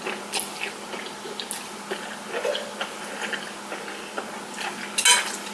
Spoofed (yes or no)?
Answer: no